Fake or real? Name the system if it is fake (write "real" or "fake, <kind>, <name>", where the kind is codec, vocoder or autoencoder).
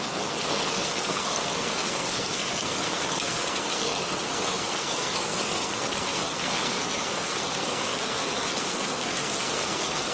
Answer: fake, codec, SNAC